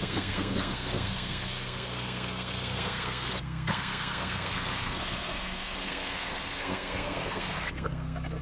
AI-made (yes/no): yes